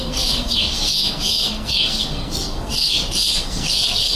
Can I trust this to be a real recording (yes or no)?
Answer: no